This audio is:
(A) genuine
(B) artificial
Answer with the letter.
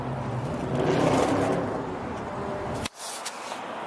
A